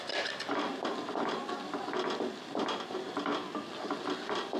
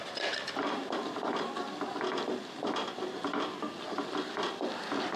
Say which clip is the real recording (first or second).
first